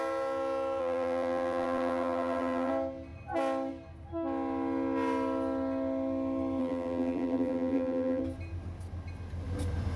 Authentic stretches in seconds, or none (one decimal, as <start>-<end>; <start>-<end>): 0.0-0.8; 2.7-6.6; 8.2-10.0